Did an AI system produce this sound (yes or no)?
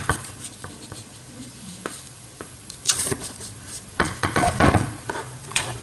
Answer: yes